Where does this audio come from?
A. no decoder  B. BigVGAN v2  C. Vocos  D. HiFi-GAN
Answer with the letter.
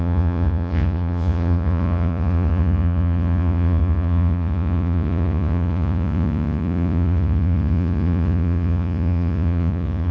C